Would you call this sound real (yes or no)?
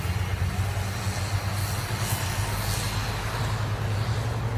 yes